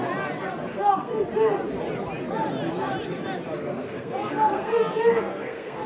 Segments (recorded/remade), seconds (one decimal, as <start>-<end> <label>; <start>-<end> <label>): 0.0-0.7 recorded; 0.7-1.2 remade; 1.2-3.6 recorded; 3.6-5.9 remade